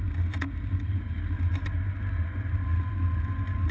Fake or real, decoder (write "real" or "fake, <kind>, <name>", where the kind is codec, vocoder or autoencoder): real